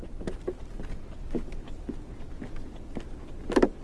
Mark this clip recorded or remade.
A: recorded